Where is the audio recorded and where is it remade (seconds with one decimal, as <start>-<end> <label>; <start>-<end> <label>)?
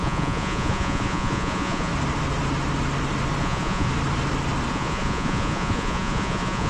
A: 0.0-1.9 remade; 1.9-3.4 recorded; 3.4-3.9 remade; 3.9-4.7 recorded; 4.7-6.7 remade